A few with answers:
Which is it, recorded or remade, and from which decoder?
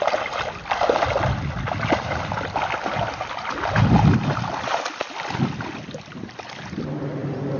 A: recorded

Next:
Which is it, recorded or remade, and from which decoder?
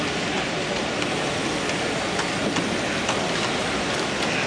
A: recorded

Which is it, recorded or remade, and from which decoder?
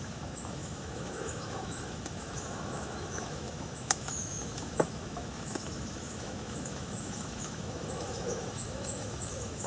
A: remade, autoencoder, DAC-VAE